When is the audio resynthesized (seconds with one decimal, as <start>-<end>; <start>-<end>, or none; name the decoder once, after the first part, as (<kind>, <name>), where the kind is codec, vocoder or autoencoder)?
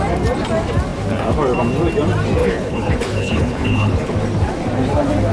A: 2.4-4.1 (codec, HILCodec)